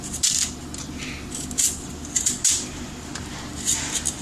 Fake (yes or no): no